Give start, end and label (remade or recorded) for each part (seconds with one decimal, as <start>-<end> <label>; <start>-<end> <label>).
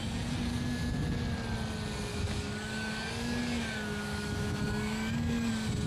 0.0-2.1 recorded; 2.1-5.5 remade; 5.5-5.9 recorded